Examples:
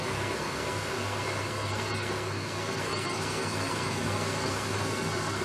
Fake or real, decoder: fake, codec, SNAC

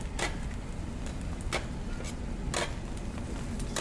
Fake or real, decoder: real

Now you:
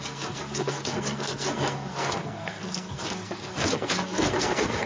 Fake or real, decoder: fake, codec, SNAC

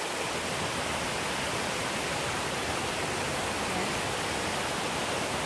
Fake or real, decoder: real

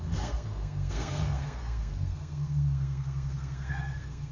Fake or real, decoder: fake, codec, SNAC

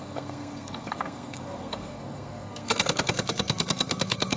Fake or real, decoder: fake, codec, SNAC